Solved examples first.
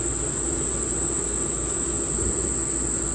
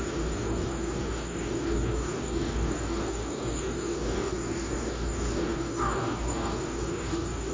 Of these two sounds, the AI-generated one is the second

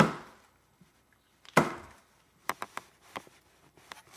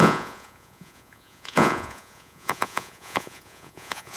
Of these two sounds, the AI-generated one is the second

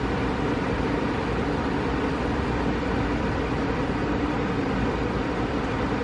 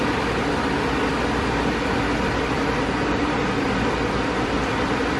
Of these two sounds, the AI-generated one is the first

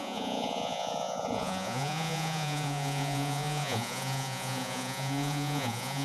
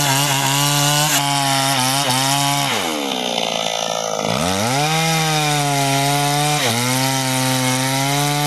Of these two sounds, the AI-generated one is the first